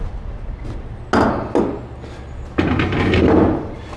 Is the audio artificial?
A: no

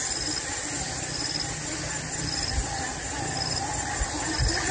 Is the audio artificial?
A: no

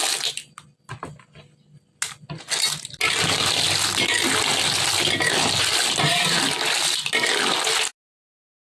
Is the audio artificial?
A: no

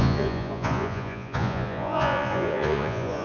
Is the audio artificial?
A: yes